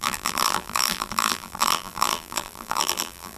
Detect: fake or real fake